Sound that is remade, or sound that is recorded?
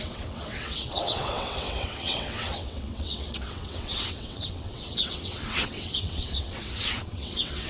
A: remade